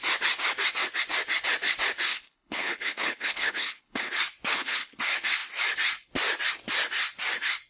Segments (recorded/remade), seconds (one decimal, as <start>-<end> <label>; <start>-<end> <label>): 0.0-2.1 recorded; 2.1-4.1 remade; 4.1-4.5 recorded; 4.5-5.0 remade; 5.0-7.7 recorded